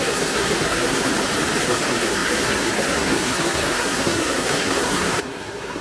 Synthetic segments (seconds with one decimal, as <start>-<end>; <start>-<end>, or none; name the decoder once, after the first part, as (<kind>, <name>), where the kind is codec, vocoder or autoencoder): 0.0-1.1 (codec, SNAC); 1.6-5.8